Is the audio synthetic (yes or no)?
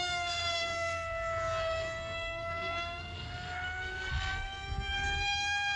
yes